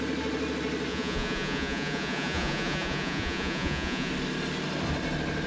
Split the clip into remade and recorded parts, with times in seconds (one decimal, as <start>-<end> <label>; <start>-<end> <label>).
0.0-0.9 recorded; 0.9-4.1 remade; 4.1-5.5 recorded

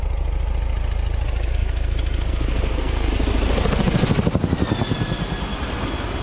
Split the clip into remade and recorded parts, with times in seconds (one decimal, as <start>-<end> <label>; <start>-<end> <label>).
0.0-1.5 recorded; 1.5-3.1 remade; 3.1-6.2 recorded

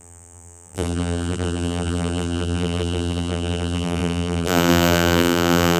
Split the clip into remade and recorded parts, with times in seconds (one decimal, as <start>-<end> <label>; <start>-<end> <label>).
0.0-5.8 remade

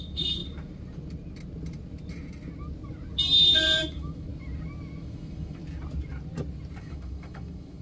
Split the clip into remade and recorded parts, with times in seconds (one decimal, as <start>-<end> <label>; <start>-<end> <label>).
0.0-0.4 remade; 0.4-3.8 recorded; 3.8-4.3 remade; 4.3-5.0 recorded; 5.0-5.6 remade; 5.6-6.8 recorded; 6.8-7.8 remade

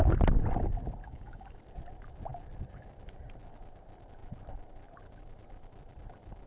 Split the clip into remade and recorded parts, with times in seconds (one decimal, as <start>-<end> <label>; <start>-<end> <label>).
0.0-1.0 recorded; 1.0-1.6 remade; 1.6-6.5 recorded

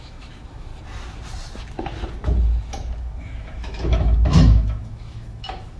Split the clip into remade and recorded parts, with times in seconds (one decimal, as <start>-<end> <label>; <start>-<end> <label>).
0.0-0.7 remade; 0.7-3.0 recorded; 3.0-5.8 remade

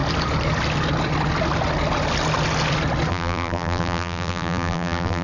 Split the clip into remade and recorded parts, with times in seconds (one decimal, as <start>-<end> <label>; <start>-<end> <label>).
0.0-3.1 recorded; 3.1-5.2 remade

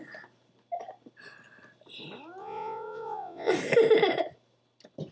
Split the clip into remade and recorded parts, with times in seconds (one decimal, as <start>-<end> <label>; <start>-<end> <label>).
0.0-2.4 recorded; 2.4-3.5 remade; 3.5-5.1 recorded